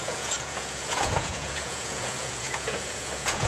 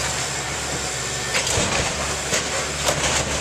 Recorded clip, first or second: second